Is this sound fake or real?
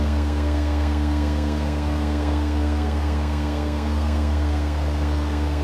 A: fake